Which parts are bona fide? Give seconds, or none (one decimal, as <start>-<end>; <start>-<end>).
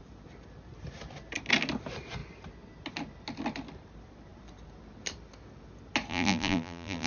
0.0-6.1